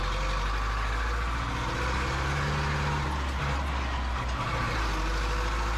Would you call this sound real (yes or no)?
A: yes